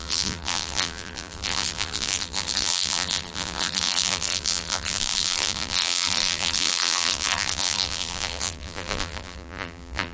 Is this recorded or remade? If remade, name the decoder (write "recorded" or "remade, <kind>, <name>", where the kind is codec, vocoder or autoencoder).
remade, vocoder, BigVGAN v2